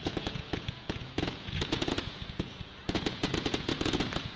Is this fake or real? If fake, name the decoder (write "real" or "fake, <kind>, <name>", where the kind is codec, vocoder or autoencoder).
fake, vocoder, Vocos